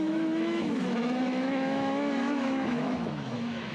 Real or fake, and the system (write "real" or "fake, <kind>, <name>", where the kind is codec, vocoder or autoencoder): fake, autoencoder, DAC-VAE